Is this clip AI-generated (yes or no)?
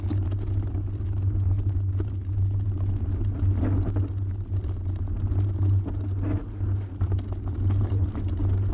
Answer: no